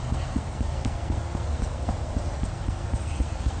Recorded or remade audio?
remade